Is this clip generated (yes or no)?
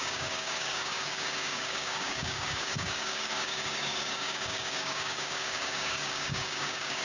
yes